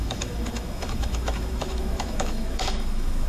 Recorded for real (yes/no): no